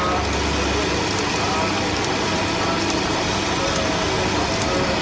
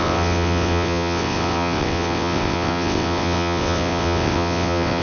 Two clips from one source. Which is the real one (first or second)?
first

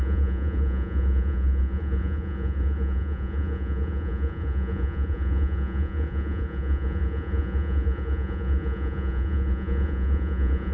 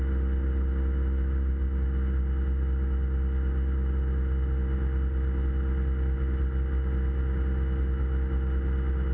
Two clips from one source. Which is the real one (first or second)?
second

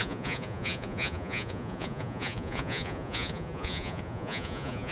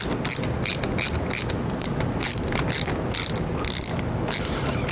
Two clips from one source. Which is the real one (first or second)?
second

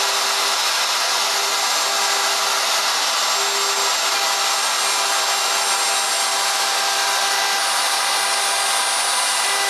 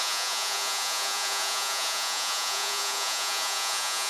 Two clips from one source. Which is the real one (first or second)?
first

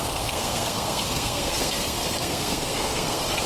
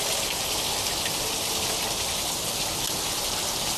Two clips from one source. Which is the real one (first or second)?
second